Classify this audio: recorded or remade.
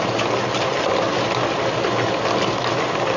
recorded